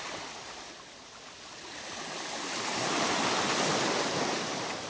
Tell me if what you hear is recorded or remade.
recorded